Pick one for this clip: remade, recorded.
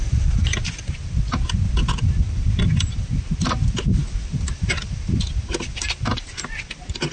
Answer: recorded